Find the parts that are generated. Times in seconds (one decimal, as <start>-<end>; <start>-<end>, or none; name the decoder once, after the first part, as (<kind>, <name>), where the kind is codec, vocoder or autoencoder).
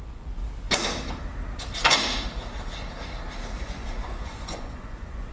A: 0.0-0.4 (vocoder, Vocos); 3.6-5.3